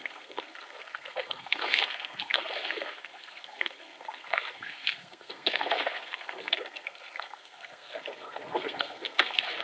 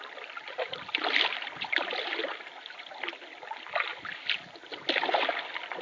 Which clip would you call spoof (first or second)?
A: first